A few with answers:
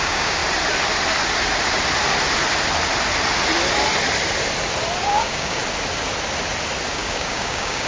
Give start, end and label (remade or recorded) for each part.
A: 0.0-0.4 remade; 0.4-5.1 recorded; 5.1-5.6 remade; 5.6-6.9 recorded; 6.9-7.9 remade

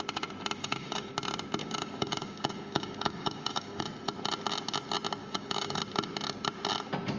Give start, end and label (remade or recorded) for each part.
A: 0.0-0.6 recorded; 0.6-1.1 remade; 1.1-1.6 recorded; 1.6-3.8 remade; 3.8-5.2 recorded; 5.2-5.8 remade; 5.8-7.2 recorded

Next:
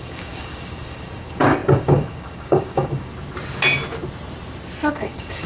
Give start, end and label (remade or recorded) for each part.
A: 0.0-3.1 remade; 3.1-4.9 recorded; 4.9-5.5 remade

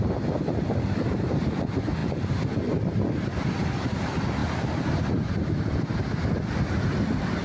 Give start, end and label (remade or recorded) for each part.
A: 0.0-7.4 recorded

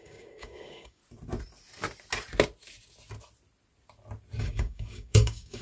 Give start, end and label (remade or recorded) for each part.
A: 0.0-1.0 remade; 1.0-4.4 recorded; 4.4-5.6 remade